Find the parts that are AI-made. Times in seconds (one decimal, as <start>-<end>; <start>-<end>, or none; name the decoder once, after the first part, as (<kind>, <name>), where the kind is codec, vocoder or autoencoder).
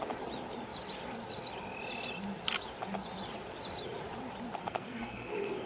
4.6-5.7 (codec, SNAC)